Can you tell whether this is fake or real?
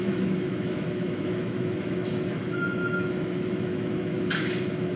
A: fake